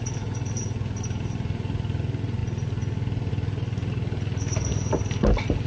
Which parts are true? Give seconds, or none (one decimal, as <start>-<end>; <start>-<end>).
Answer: 0.0-5.7